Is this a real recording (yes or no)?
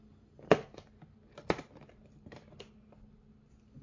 yes